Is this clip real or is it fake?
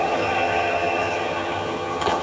fake